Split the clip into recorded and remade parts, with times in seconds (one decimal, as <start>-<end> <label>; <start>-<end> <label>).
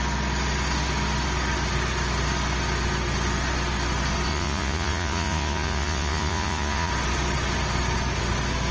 0.0-4.3 recorded; 4.3-6.9 remade; 6.9-8.7 recorded